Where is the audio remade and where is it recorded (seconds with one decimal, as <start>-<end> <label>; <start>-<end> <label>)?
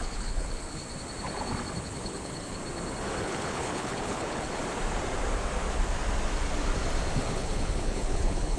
0.0-0.8 remade; 0.8-1.8 recorded; 1.8-2.6 remade; 2.6-3.2 recorded; 3.2-4.6 remade; 4.6-7.2 recorded; 7.2-8.6 remade